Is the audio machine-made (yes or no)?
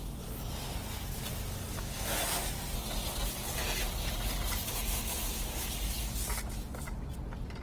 no